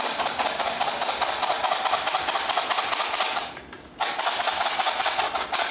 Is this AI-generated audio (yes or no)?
no